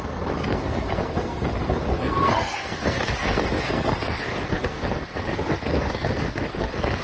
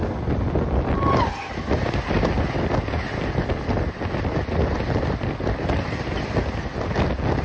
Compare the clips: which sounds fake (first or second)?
first